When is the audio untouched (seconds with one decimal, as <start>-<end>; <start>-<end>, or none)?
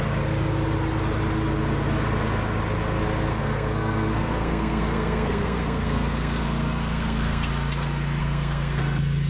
0.0-3.3; 7.5-8.2; 8.8-9.3